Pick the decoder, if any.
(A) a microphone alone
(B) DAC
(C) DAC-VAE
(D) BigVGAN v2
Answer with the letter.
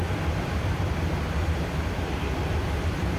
D